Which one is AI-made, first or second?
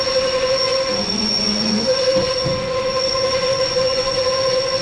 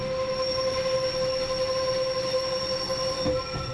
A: first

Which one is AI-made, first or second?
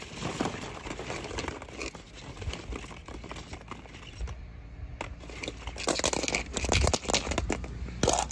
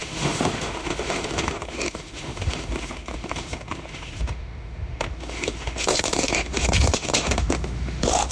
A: second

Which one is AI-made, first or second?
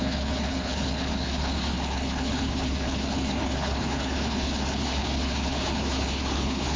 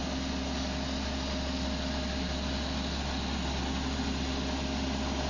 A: first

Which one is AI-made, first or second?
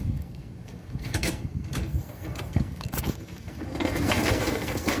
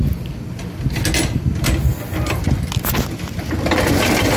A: first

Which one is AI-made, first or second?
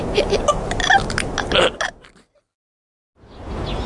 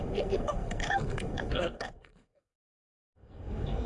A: second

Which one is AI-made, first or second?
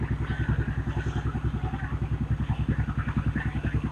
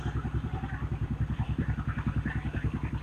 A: second